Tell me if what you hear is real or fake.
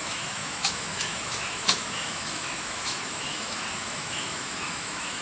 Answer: fake